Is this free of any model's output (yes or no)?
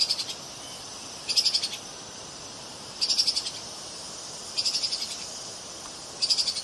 yes